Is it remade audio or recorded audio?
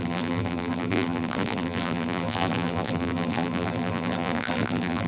remade